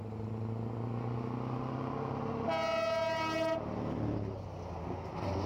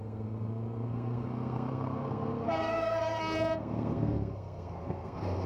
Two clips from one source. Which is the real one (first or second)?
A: first